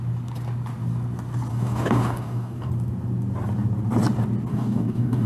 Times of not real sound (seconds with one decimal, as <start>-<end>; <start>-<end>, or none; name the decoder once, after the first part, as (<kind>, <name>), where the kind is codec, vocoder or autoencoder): 1.5-2.7 (codec, DAC); 4.5-5.3